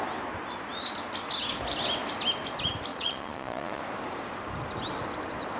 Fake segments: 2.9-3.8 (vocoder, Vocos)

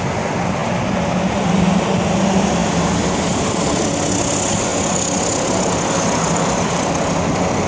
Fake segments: none

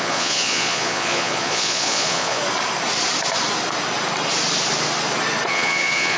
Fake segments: 0.0-2.4 (vocoder, Vocos); 5.5-6.2

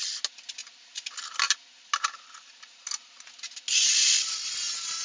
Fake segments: none

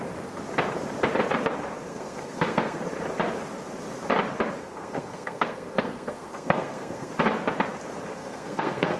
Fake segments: 1.9-2.8 (codec, SNAC); 4.6-7.1; 8.2-9.0

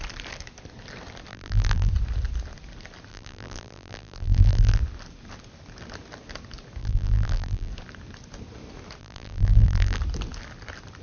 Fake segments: 1.3-1.9 (vocoder, BigVGAN v2); 3.1-4.8; 6.8-7.7; 9.0-10.0

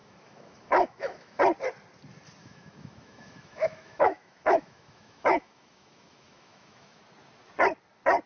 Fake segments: 0.0-1.4 (autoencoder, DAC-VAE); 2.4-7.0

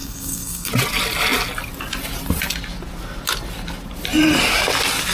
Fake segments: 0.0-0.7 (codec, SNAC)